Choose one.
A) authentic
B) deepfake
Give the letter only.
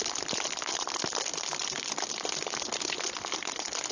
A